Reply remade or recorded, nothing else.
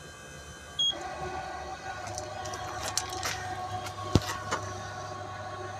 recorded